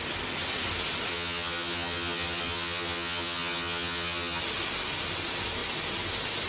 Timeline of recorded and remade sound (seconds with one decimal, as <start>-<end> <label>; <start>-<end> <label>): 0.0-1.1 recorded; 1.1-4.4 remade; 4.4-6.5 recorded